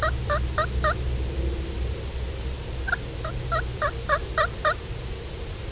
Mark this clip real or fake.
real